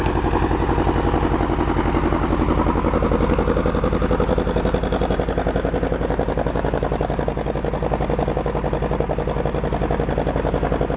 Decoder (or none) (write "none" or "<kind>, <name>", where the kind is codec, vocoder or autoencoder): none